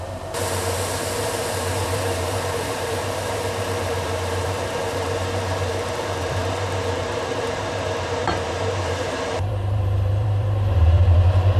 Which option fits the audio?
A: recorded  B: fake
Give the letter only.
B